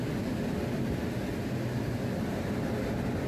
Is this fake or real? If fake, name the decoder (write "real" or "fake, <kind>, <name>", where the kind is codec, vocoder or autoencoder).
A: real